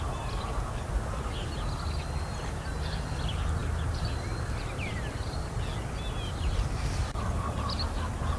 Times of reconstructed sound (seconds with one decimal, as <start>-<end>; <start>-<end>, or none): 3.6-5.3